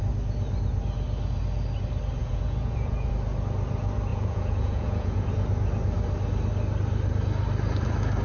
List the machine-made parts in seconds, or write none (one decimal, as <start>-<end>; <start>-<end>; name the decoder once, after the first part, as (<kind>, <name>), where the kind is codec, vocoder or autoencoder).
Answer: 2.2-3.1 (vocoder, Vocos); 4.1-5.3